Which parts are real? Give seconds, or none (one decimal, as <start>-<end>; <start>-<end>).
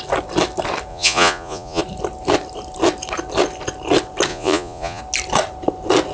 0.0-0.9; 1.8-4.3; 5.0-6.1